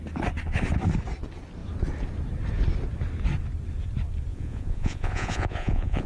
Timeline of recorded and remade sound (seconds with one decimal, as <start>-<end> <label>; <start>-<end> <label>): 0.0-4.3 recorded; 4.3-6.1 remade